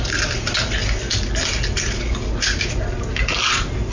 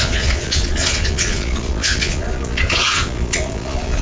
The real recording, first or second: first